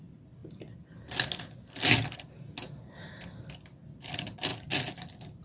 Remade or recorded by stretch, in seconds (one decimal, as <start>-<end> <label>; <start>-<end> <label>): 0.0-5.4 recorded